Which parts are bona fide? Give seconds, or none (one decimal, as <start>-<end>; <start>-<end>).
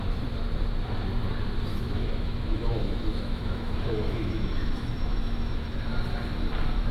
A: 0.0-1.7; 5.8-6.9